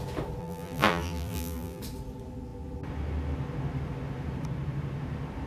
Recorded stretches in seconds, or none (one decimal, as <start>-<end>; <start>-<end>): 0.0-0.4; 1.8-5.5